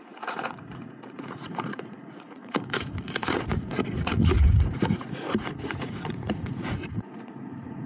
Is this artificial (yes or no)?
yes